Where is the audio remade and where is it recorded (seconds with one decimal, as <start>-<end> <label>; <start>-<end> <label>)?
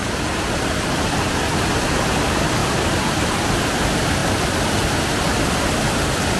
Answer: 0.0-1.3 remade; 1.3-2.6 recorded; 2.6-3.6 remade; 3.6-6.4 recorded